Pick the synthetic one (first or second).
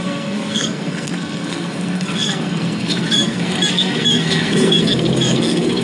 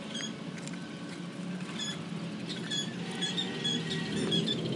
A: first